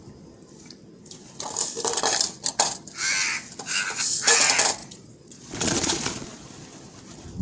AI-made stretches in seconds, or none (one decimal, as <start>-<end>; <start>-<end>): 4.8-6.5